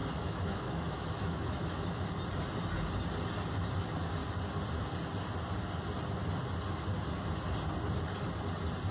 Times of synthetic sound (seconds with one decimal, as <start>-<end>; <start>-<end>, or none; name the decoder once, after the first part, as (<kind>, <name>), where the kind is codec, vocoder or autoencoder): 0.0-2.0 (autoencoder, DAC-VAE)